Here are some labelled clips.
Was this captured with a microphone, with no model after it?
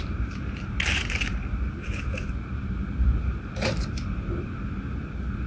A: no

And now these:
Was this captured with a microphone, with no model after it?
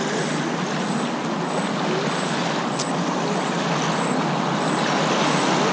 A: yes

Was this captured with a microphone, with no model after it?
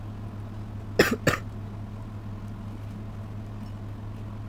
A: yes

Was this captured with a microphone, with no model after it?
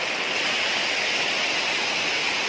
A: yes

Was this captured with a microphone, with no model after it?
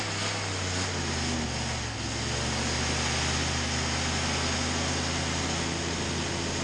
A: yes